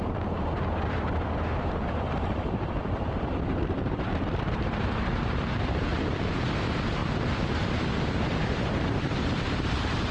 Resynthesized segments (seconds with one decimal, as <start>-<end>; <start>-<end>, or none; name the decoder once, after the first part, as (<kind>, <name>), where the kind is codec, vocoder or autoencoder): 0.0-10.1 (vocoder, BigVGAN v2)